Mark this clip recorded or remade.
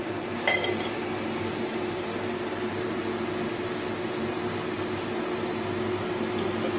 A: recorded